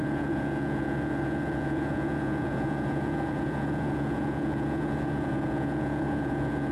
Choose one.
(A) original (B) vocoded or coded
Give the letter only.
B